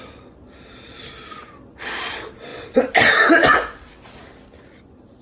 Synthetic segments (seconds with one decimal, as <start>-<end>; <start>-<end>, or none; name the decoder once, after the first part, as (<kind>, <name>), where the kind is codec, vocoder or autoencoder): none